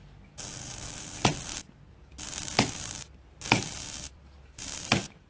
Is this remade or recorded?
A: recorded